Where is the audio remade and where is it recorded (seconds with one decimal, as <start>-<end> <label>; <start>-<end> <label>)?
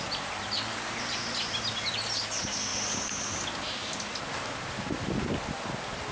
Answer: 0.0-6.1 recorded